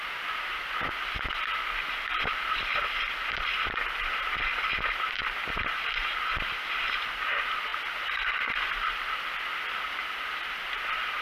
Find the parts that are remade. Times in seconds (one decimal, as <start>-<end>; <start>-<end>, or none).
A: none